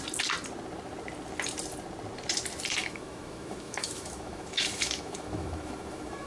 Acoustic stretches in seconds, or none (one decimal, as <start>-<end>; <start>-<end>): 0.0-2.8